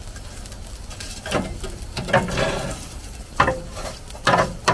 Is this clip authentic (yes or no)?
no